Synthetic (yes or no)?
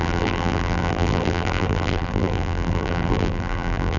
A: yes